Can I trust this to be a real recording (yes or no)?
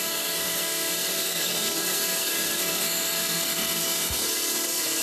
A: no